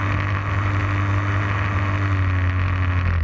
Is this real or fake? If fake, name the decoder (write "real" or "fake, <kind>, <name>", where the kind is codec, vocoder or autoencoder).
real